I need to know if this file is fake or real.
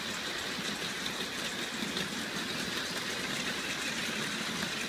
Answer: real